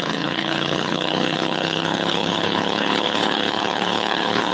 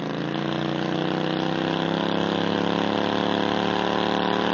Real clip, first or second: second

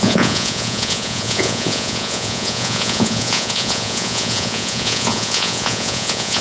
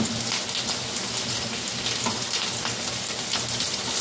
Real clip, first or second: second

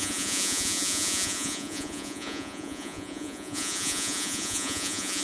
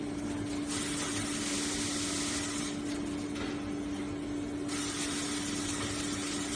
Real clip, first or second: second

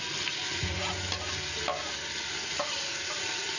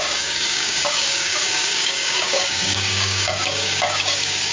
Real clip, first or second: first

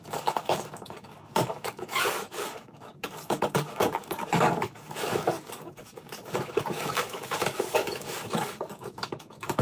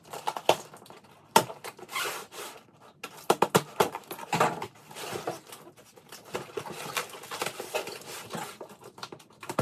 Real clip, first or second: second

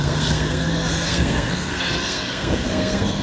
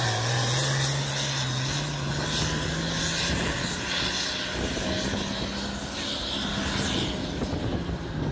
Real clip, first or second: second